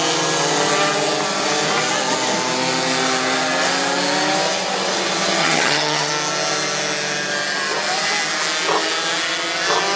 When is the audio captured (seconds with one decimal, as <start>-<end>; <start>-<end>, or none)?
0.0-5.4; 6.1-10.0